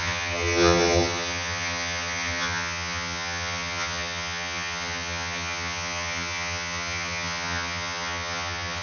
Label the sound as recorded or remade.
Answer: remade